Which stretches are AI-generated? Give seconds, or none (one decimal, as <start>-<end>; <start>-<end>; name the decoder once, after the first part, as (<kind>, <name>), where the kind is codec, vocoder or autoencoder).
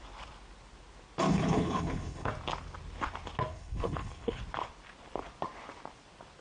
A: 1.3-2.3 (codec, HILCodec); 3.5-4.4